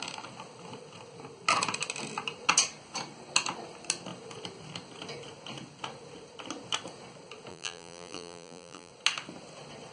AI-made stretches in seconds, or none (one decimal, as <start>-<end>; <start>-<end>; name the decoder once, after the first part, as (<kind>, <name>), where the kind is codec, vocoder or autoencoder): 7.5-8.9 (vocoder, BigVGAN v2)